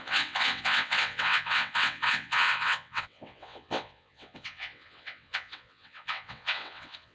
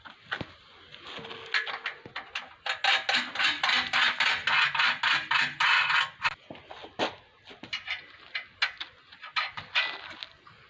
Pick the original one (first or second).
second